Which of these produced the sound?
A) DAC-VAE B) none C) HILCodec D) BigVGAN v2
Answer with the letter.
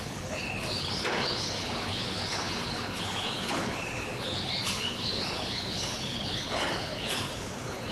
C